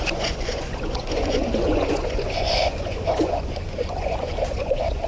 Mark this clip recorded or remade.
remade